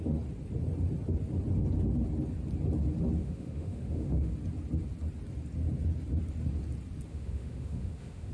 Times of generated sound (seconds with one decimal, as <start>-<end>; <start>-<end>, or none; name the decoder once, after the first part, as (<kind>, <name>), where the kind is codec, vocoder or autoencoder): 3.2-4.3 (autoencoder, DAC-VAE); 7.1-8.3